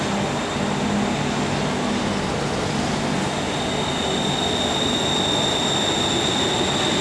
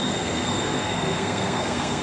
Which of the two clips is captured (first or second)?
first